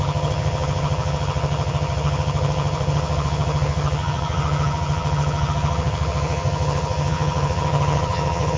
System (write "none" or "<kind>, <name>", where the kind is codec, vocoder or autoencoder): vocoder, HiFi-GAN